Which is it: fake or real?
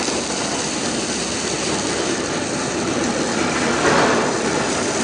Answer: fake